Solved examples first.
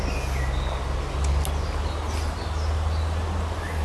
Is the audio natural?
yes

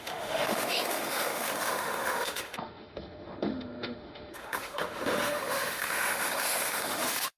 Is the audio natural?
no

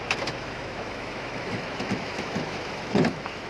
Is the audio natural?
no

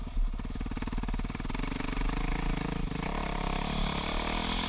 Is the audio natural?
yes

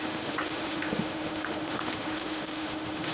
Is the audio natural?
no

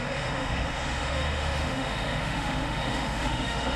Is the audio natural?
no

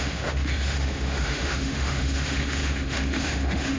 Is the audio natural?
no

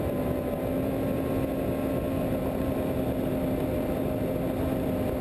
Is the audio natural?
yes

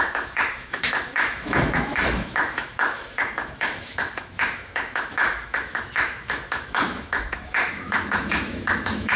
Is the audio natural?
no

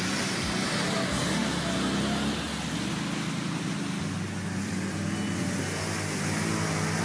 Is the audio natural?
yes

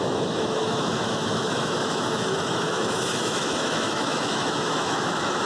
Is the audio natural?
no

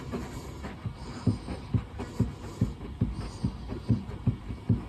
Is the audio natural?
yes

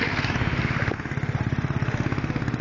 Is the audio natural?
yes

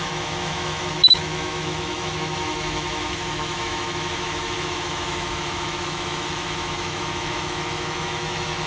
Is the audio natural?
no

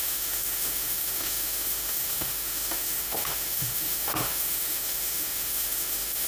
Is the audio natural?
no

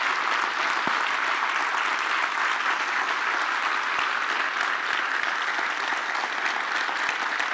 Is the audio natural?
yes